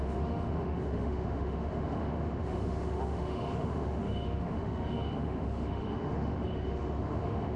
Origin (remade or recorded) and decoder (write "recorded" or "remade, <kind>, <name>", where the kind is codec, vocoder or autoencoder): remade, autoencoder, DAC-VAE